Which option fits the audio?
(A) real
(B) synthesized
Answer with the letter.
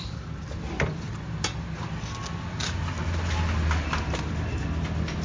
A